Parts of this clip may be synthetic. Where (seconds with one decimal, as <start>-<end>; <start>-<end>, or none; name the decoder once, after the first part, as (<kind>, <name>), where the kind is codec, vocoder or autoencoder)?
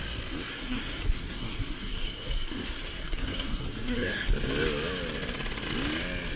0.5-4.3 (codec, SNAC)